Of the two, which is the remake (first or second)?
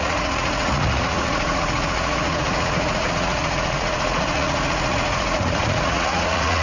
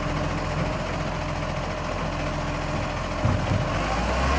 first